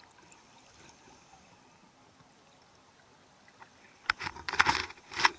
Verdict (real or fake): fake